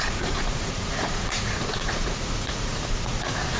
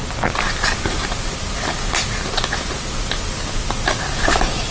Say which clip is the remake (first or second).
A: first